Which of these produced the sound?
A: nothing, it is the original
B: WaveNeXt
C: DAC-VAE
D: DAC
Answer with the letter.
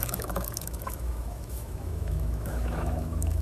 C